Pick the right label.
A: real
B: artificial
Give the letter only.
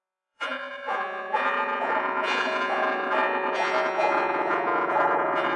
B